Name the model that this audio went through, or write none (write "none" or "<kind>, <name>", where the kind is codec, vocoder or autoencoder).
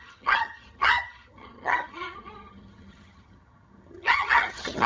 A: vocoder, HiFi-GAN